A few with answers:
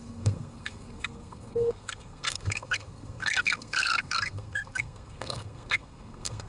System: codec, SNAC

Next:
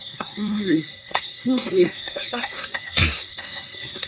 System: codec, SNAC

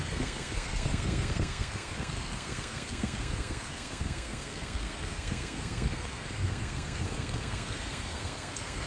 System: codec, SNAC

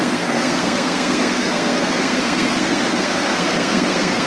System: codec, SNAC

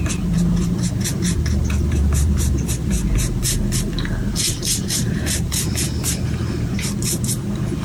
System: vocoder, BigVGAN v2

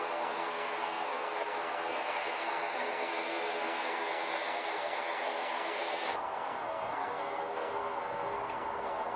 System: codec, SNAC